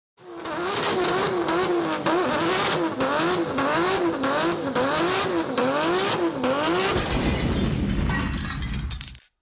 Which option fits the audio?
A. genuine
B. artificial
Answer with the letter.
A